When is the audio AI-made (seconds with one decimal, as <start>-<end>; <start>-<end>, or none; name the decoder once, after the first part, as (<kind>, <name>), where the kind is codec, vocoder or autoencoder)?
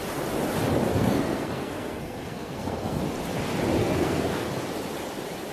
0.9-3.0 (codec, SNAC); 3.8-4.5